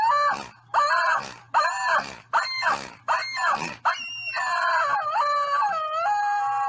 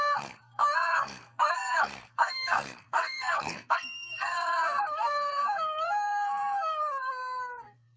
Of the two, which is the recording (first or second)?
first